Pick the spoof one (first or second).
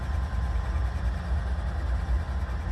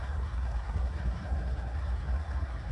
second